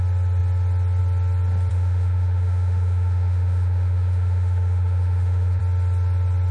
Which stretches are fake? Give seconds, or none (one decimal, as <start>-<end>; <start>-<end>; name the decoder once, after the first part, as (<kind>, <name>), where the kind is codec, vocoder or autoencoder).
1.7-5.6 (autoencoder, DAC-VAE)

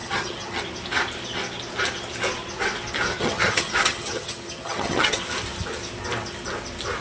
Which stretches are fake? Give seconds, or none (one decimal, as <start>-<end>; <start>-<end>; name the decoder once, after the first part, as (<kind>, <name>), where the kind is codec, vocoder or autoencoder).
0.0-0.6 (vocoder, HiFi-GAN); 3.1-5.2

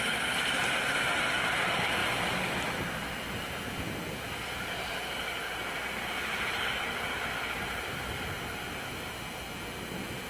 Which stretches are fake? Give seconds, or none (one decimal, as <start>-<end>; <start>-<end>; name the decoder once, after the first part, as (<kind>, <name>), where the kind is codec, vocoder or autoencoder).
none